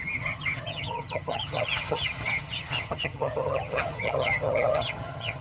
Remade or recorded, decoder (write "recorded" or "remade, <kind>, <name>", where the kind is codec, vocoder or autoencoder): remade, vocoder, HiFi-GAN